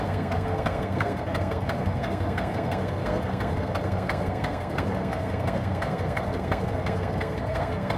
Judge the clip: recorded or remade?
remade